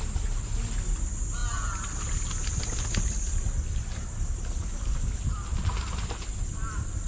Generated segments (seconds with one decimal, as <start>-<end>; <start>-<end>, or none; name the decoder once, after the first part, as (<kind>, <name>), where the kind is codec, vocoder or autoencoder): none